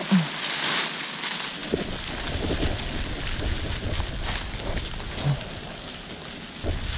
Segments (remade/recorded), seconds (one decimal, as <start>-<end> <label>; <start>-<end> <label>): 0.0-7.0 recorded